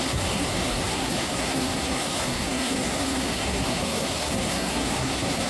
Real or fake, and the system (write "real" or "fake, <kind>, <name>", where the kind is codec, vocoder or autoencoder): fake, codec, SNAC